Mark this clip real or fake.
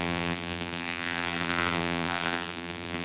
fake